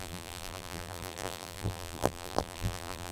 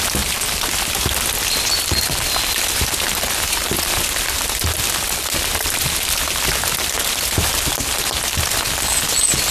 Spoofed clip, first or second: first